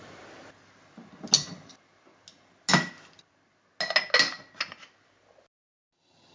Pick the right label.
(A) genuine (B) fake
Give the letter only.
A